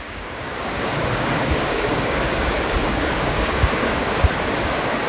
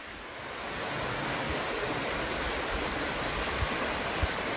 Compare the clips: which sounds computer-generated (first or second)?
first